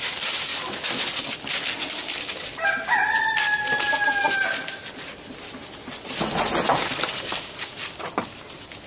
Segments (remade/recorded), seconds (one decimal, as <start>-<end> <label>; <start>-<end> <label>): 0.0-8.9 recorded